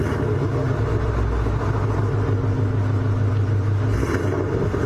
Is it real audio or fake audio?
real